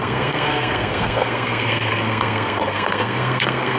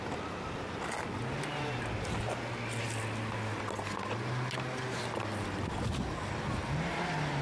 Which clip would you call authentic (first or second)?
second